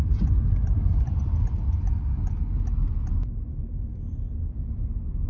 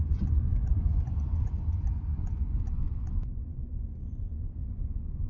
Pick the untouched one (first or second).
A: first